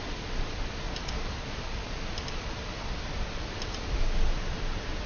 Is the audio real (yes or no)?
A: yes